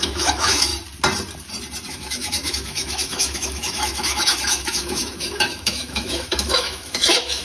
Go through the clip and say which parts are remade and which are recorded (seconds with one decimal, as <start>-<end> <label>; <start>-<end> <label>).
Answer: 0.0-0.7 remade; 0.7-1.9 recorded; 1.9-7.4 remade